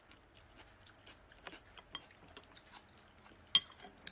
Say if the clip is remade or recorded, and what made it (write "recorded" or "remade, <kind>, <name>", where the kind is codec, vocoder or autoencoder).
recorded